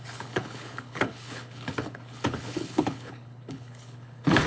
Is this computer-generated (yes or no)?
yes